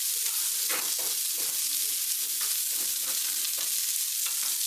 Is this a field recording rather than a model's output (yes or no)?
yes